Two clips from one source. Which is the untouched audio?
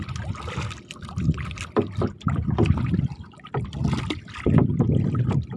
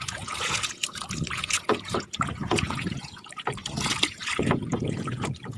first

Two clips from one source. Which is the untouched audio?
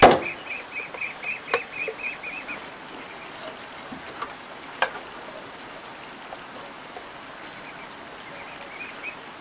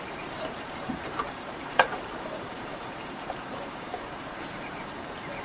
first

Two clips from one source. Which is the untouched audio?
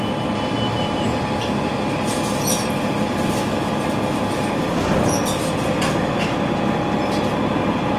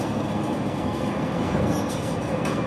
first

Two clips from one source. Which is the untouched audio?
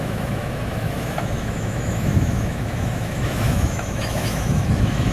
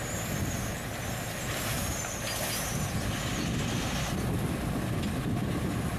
second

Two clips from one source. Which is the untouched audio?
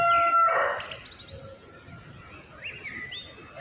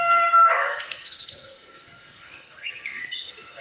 first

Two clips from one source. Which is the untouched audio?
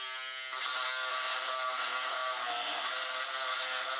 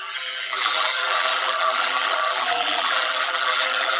first